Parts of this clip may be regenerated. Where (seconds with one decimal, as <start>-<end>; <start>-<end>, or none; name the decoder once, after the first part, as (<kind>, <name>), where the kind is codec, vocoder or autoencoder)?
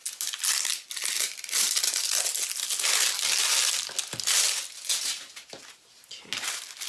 none